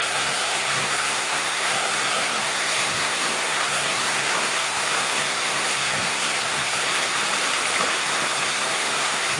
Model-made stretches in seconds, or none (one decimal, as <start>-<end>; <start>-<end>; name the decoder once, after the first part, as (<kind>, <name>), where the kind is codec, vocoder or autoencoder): 0.0-7.2 (codec, SNAC); 7.9-9.4